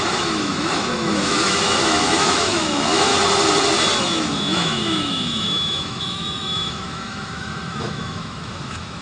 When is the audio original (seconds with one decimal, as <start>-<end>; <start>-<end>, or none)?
3.1-4.0

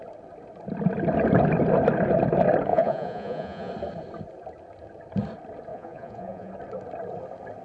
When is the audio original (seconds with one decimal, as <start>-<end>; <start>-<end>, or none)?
0.0-2.7; 3.7-5.7; 6.5-7.6

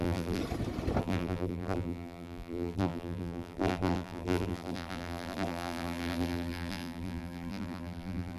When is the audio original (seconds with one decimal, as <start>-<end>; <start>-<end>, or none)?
0.4-1.0